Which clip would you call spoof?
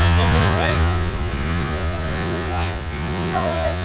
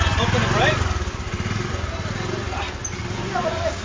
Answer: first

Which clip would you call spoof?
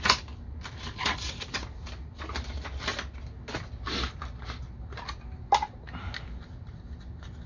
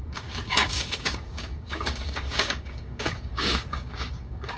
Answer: second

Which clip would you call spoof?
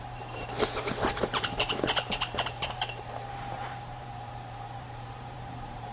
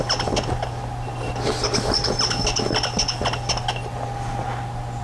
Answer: first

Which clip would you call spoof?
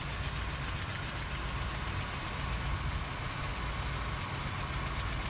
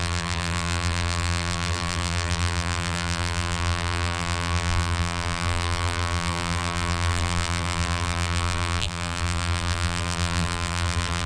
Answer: second